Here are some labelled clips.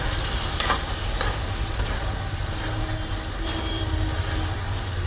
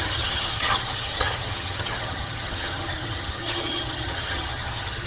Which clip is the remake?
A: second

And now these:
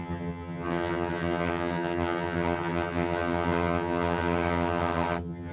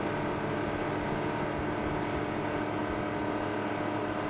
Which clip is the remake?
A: first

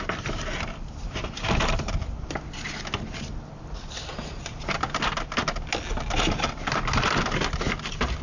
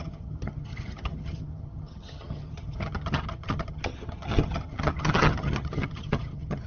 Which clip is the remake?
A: second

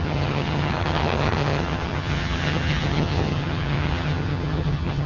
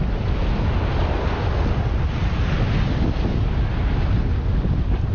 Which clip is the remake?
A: first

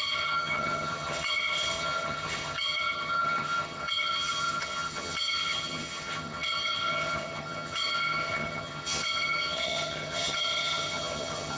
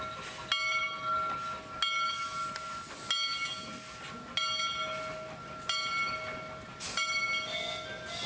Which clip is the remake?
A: first